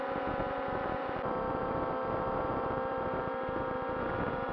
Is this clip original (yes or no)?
no